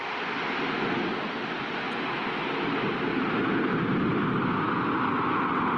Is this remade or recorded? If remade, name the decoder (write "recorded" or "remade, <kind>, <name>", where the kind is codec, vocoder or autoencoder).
recorded